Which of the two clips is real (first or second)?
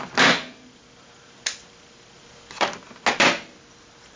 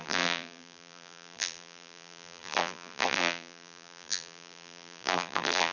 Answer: first